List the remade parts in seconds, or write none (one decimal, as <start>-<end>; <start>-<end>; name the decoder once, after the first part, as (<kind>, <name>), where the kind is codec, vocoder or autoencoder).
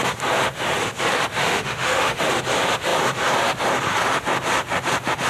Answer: 1.4-2.2 (autoencoder, DAC-VAE)